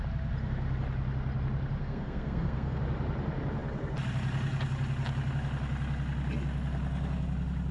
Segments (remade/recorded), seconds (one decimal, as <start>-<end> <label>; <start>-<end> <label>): 0.0-1.8 recorded; 1.8-2.8 remade; 2.8-7.7 recorded